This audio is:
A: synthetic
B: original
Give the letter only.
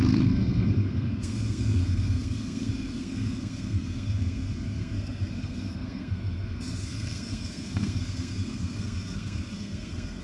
A